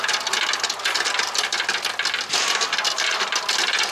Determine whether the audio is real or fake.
real